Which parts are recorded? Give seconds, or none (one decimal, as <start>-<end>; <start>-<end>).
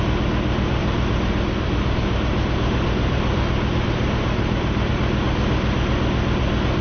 0.0-0.8; 4.9-6.8